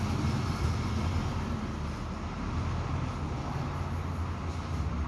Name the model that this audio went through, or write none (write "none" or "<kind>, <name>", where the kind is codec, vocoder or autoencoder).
none